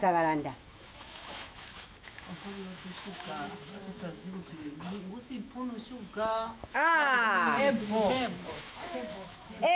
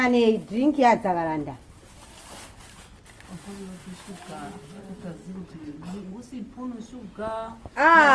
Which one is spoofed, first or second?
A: first